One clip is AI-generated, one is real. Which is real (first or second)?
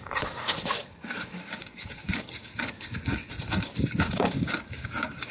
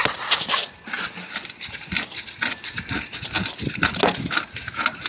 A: second